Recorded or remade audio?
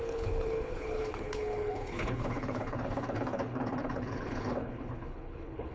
remade